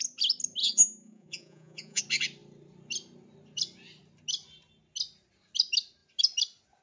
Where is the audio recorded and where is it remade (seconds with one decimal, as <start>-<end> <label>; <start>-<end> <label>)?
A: 0.0-0.6 recorded; 0.6-2.0 remade; 2.0-6.8 recorded